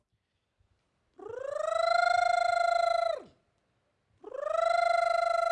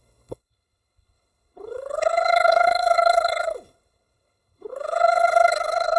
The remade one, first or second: second